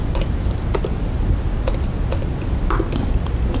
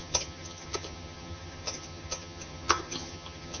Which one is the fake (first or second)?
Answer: second